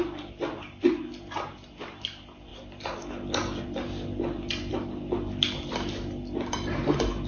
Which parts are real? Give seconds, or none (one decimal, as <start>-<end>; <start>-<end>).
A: 0.0-7.3